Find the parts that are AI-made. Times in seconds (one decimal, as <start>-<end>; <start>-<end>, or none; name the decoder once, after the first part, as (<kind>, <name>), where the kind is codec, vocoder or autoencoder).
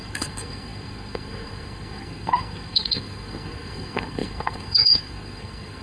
0.0-5.8 (codec, SNAC)